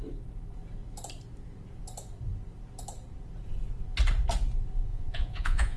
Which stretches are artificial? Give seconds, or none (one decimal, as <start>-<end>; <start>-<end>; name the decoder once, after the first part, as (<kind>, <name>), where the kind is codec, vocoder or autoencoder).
4.9-5.8 (vocoder, Vocos)